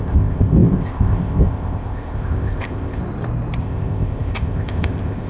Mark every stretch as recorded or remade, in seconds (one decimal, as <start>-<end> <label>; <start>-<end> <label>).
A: 0.0-3.0 remade; 3.0-3.6 recorded; 3.6-5.3 remade